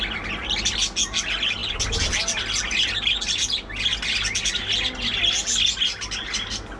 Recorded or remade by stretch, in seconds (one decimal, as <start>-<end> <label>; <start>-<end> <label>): 0.0-6.8 recorded